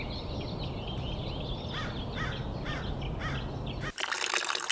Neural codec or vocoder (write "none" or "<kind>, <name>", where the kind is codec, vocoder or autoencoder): none